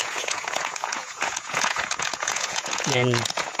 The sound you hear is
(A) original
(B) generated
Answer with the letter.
B